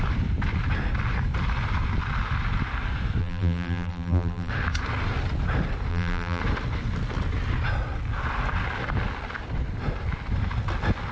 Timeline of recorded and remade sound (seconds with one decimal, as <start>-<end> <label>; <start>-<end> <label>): 0.0-3.2 recorded; 3.2-4.5 remade; 4.5-5.9 recorded; 5.9-6.4 remade; 6.4-11.1 recorded